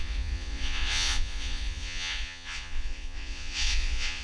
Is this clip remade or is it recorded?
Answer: remade